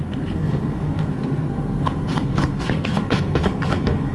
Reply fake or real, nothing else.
fake